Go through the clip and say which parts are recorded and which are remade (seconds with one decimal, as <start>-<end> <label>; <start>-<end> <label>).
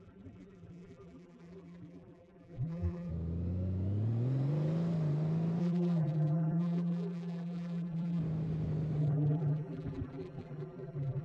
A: 0.0-3.1 remade; 3.1-5.6 recorded; 5.6-8.2 remade; 8.2-9.0 recorded; 9.0-11.2 remade